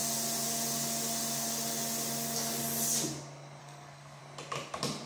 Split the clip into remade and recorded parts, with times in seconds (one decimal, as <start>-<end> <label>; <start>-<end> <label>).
0.0-3.6 recorded; 3.6-4.2 remade; 4.2-5.1 recorded